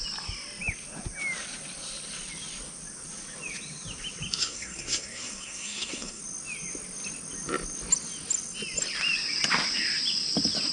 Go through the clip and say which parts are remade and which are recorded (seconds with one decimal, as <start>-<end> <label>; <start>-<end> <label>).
0.0-4.4 recorded; 4.4-6.2 remade; 6.2-10.7 recorded